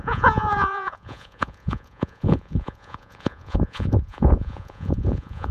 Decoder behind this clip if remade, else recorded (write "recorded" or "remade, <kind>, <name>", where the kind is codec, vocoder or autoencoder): remade, vocoder, Vocos